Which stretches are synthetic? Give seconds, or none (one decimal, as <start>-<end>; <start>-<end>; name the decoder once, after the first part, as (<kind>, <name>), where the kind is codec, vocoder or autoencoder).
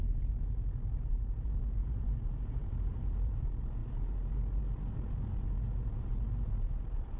1.8-3.4 (vocoder, BigVGAN v2)